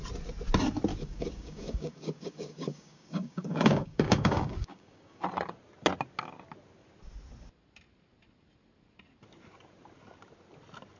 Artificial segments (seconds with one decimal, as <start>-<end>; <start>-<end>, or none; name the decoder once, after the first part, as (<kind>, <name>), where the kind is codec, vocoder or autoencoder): 0.9-5.2 (codec, DAC)